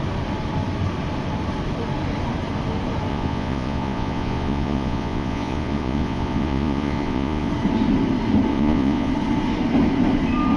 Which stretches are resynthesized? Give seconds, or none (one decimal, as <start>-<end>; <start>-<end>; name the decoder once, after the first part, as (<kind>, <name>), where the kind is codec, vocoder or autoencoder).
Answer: 3.1-7.5 (vocoder, Vocos); 8.5-9.1